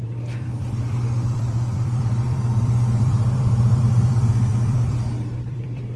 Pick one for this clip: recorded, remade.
remade